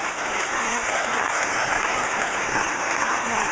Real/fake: fake